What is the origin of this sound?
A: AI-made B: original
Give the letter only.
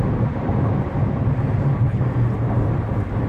B